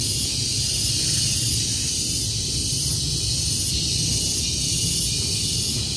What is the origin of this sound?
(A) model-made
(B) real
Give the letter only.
B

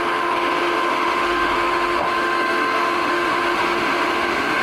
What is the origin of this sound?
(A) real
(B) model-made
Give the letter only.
B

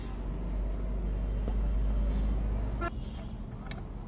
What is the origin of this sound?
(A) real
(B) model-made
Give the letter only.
A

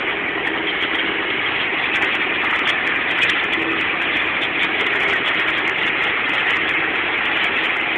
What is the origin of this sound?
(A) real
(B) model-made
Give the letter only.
A